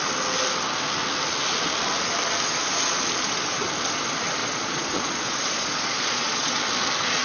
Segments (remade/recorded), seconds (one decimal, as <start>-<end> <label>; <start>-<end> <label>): 0.0-4.4 recorded; 4.4-6.6 remade; 6.6-7.2 recorded